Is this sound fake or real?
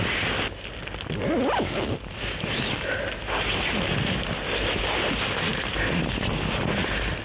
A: real